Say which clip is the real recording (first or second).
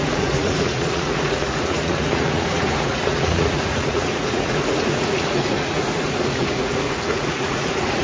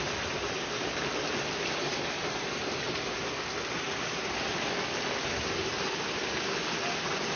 second